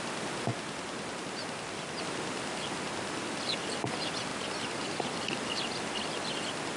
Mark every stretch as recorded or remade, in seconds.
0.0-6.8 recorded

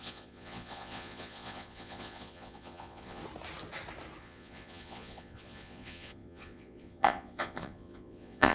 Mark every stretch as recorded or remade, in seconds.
0.0-3.2 remade; 3.2-4.2 recorded; 4.2-8.5 remade

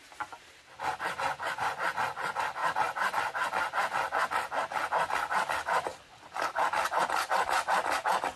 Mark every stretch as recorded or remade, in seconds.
0.0-1.3 recorded; 1.3-1.8 remade; 1.8-8.4 recorded

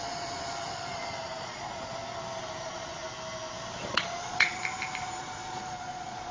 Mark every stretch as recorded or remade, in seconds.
0.0-2.0 remade; 2.0-2.6 recorded; 2.6-3.0 remade; 3.0-3.9 recorded; 3.9-4.6 remade; 4.6-5.2 recorded; 5.2-6.3 remade